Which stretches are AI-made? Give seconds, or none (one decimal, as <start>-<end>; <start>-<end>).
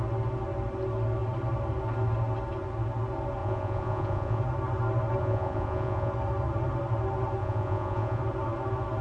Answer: 3.4-4.4; 5.2-6.1; 7.4-8.2